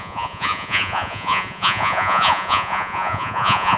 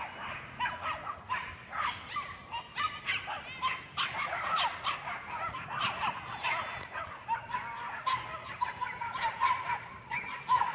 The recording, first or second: second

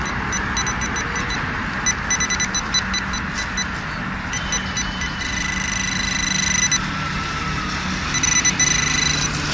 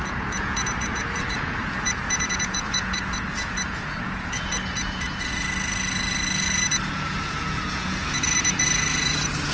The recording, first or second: first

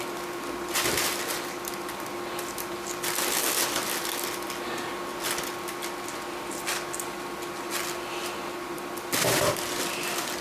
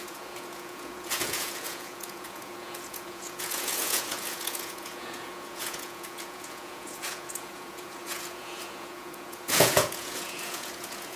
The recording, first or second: first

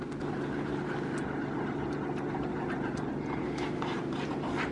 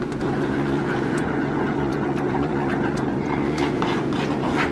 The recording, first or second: first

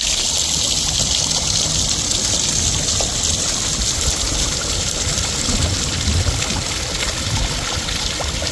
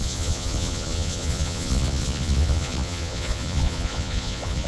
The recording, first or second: first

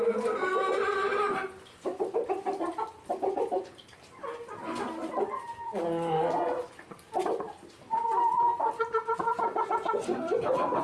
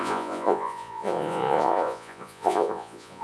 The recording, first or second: first